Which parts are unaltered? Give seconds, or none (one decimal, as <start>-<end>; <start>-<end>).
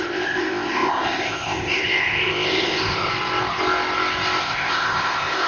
3.1-4.4